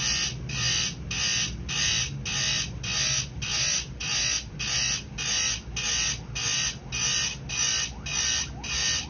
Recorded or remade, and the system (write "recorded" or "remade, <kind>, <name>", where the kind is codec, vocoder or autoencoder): recorded